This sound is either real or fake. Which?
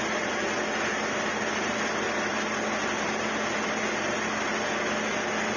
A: real